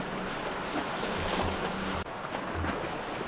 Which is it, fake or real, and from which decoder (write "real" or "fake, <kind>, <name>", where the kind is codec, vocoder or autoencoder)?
real